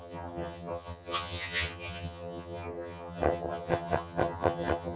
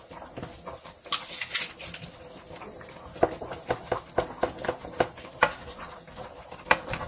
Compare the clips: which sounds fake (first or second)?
first